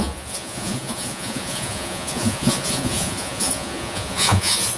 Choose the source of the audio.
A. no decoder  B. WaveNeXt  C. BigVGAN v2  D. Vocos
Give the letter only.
D